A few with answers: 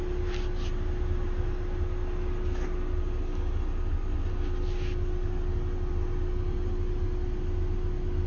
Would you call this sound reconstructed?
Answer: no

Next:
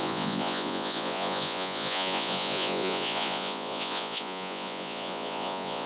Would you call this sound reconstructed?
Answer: yes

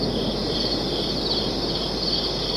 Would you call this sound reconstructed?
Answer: no